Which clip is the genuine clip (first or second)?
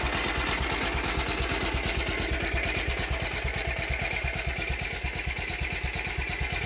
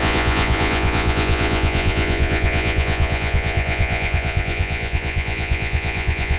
first